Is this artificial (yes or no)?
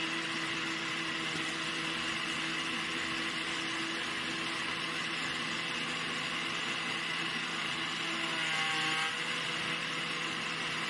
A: no